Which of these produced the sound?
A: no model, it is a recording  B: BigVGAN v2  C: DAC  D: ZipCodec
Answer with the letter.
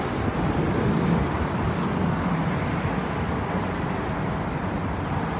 A